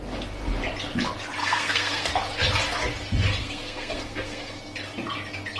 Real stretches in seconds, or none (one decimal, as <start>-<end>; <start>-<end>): 0.0-1.4; 2.1-3.4; 4.6-5.6

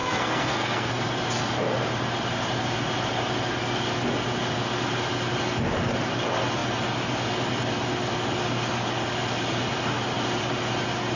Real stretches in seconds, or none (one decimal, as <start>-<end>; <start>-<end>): 1.0-11.2

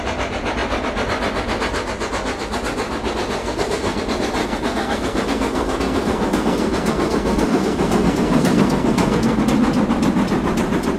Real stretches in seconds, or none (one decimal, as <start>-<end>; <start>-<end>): 0.0-3.4; 4.0-4.4; 9.4-11.0

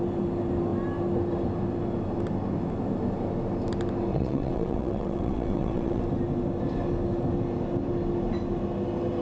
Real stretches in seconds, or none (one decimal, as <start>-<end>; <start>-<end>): 0.0-4.1; 6.0-9.2